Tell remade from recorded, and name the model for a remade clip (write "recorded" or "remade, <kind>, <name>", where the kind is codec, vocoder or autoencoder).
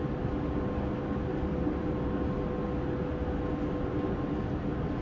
recorded